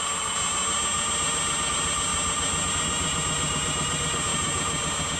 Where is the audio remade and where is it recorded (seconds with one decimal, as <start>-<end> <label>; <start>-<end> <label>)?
0.0-5.2 recorded